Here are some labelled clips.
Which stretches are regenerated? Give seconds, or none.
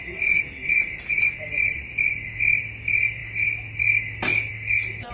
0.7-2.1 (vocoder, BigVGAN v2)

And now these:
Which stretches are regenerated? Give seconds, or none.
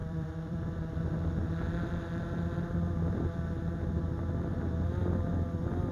0.0-0.7 (vocoder, BigVGAN v2)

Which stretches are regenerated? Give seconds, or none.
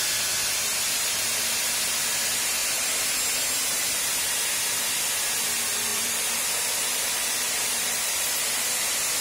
5.9-8.4 (vocoder, BigVGAN v2)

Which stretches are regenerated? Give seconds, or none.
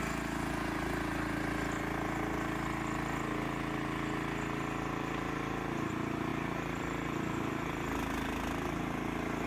none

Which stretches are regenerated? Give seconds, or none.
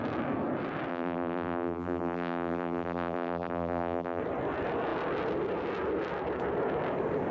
0.9-4.2 (vocoder, BigVGAN v2)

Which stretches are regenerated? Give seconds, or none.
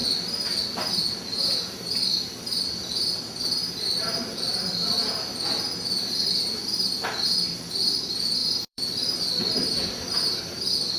8.4-9.2 (vocoder, BigVGAN v2)